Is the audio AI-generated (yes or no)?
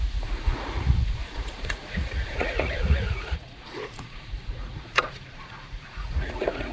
yes